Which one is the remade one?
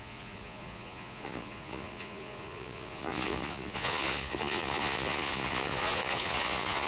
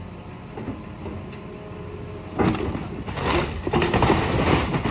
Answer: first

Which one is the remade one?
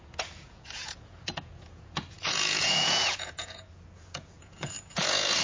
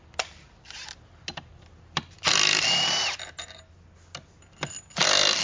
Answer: first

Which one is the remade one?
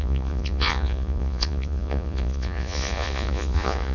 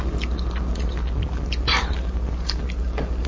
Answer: first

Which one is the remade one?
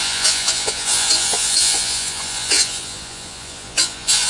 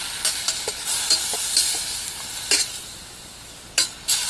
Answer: first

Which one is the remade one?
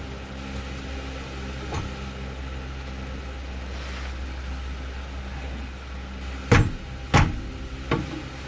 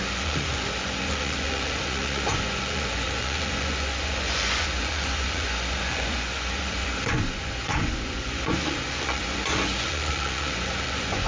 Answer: second